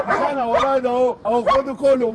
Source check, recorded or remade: remade